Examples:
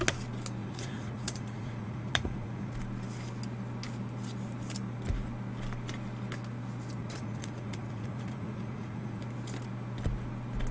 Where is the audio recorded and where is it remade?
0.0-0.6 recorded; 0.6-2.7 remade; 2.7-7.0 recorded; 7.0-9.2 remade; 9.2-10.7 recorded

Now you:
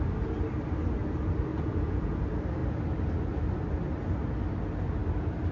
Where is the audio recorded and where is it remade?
0.0-1.5 recorded; 1.5-2.2 remade; 2.2-5.5 recorded

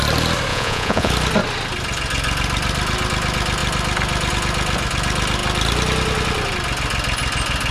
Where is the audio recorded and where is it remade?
0.0-0.5 recorded; 0.5-1.1 remade; 1.1-7.7 recorded

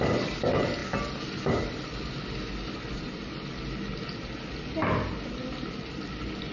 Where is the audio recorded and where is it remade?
0.0-6.5 recorded

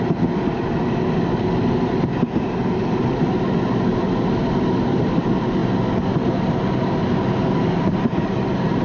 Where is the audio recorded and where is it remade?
0.0-8.8 recorded